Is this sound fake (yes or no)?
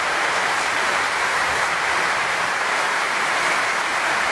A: yes